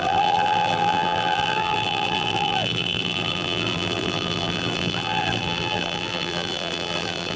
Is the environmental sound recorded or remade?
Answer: remade